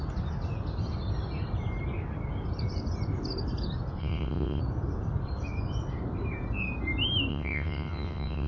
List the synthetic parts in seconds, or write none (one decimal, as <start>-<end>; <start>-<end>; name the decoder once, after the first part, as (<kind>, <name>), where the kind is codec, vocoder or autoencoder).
4.0-4.6 (vocoder, WaveNeXt); 7.3-8.5